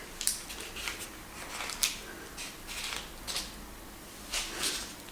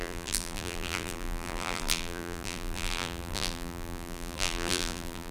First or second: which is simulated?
second